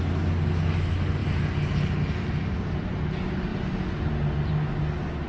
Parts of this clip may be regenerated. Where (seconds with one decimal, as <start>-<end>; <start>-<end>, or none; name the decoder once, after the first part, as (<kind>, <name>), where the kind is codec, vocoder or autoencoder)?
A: none